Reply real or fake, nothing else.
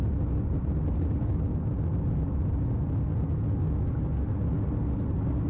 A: real